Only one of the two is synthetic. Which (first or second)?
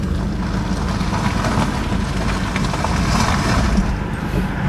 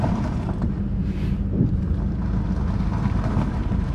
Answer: second